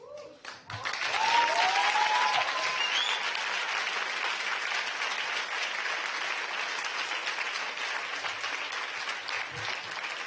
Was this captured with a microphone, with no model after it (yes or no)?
yes